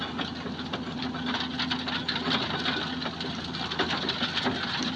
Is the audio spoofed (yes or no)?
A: no